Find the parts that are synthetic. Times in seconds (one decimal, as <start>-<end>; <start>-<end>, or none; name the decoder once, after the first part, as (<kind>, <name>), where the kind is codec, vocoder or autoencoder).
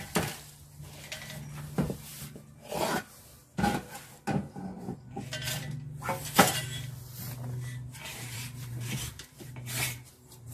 8.1-10.5 (vocoder, BigVGAN v2)